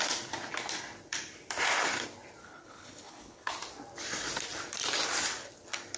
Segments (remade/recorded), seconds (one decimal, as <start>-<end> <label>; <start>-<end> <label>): 0.0-2.4 recorded; 2.4-3.5 remade; 3.5-6.0 recorded